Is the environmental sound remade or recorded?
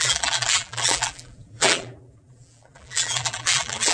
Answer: remade